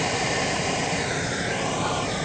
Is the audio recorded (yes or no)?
no